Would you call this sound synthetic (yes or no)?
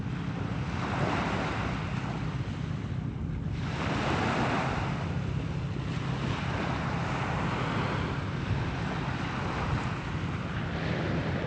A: no